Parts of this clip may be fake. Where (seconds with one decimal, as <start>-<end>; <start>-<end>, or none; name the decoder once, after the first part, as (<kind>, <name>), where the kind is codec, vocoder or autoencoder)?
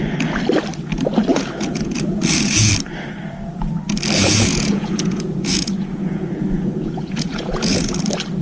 1.3-2.7 (vocoder, Vocos); 4.2-8.0